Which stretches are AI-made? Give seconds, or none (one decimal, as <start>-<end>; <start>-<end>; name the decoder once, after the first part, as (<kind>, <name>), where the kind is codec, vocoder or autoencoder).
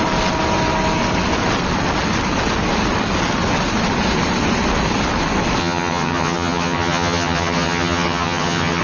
5.6-8.8 (vocoder, HiFi-GAN)